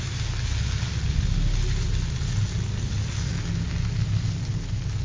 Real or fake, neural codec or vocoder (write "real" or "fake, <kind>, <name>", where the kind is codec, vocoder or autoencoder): real